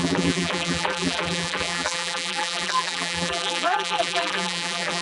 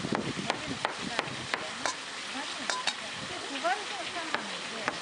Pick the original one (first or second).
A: second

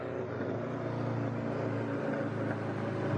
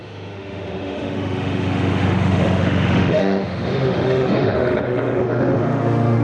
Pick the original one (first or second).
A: first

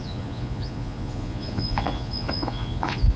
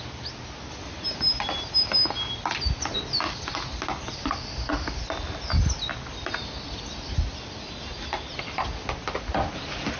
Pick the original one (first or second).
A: second